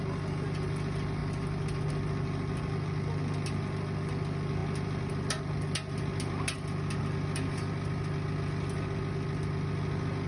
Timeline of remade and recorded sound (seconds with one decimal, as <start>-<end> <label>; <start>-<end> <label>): 0.0-10.3 recorded